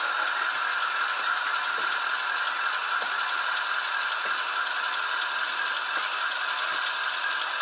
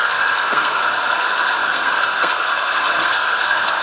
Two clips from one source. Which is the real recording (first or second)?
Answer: first